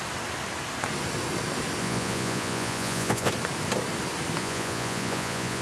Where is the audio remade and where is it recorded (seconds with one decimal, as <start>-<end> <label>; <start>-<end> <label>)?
0.0-1.8 recorded; 1.8-3.3 remade; 3.3-4.4 recorded; 4.4-5.6 remade